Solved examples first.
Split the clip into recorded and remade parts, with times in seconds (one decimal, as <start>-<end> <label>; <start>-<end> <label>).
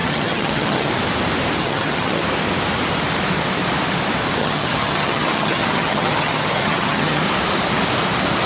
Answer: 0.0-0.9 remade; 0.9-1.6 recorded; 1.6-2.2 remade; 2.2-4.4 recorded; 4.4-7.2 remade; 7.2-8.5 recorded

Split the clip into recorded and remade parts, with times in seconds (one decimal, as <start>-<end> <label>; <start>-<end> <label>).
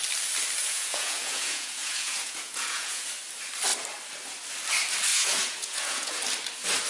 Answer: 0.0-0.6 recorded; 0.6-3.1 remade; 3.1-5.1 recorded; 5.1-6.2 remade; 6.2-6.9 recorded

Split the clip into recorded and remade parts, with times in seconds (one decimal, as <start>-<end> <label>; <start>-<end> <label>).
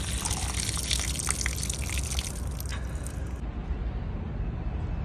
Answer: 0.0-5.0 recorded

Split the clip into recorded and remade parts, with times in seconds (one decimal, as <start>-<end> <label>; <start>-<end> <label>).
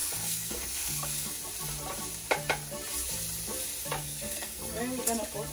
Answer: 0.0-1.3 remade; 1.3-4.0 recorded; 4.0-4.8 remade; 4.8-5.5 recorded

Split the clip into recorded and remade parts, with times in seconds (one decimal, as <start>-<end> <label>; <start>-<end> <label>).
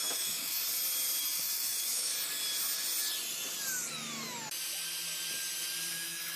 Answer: 0.0-0.6 remade; 0.6-1.2 recorded; 1.2-2.1 remade; 2.1-5.9 recorded; 5.9-6.4 remade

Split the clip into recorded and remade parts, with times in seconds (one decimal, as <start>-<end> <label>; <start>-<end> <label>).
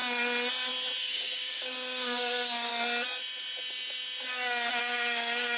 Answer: 0.0-1.0 recorded; 1.0-2.7 remade; 2.7-4.8 recorded; 4.8-5.6 remade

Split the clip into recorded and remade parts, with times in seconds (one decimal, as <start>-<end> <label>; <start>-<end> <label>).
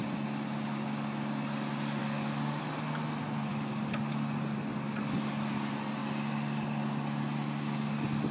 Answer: 0.0-2.0 recorded; 2.0-2.6 remade; 2.6-8.3 recorded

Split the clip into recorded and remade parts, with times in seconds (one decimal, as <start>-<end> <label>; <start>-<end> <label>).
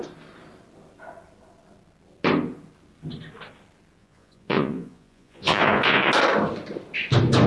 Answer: 0.0-4.0 recorded; 4.0-6.1 remade; 6.1-7.5 recorded